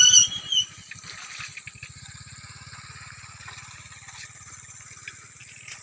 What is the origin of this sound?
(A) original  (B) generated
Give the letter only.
A